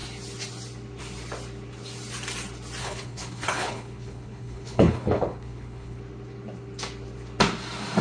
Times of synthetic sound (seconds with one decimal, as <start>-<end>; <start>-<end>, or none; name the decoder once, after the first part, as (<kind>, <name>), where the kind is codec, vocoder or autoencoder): 2.8-6.0 (codec, HILCodec)